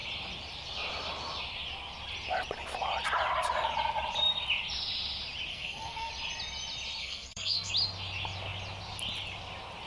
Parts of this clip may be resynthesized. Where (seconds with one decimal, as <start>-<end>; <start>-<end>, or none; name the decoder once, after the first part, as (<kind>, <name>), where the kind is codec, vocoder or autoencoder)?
5.5-6.1 (codec, SNAC); 7.0-7.7